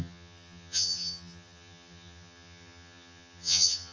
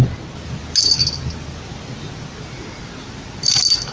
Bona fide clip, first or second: second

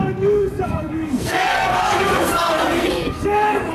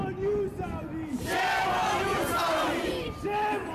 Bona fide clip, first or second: second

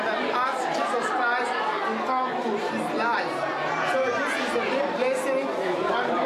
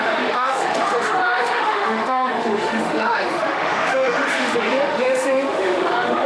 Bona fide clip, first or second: first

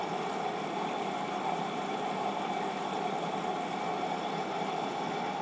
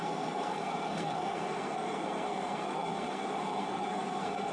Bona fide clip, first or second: first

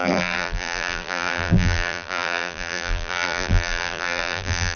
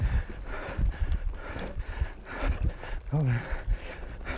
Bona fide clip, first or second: second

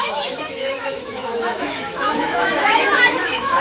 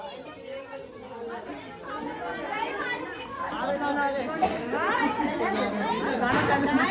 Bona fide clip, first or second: second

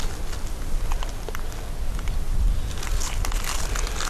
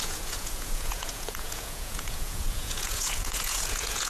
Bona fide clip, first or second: first